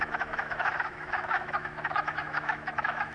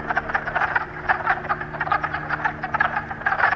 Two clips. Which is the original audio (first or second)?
second